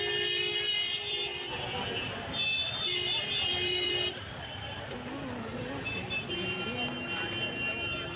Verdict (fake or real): real